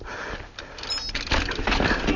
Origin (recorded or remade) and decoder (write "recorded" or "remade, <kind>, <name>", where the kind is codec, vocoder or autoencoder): recorded